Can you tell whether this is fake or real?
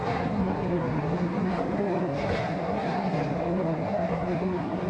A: fake